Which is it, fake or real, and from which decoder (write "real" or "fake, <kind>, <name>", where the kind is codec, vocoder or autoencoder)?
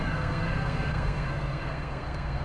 fake, codec, SNAC